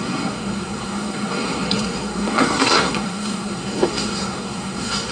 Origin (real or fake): fake